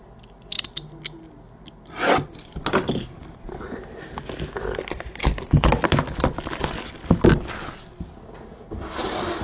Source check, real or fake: real